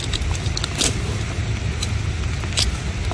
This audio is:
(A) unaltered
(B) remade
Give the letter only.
A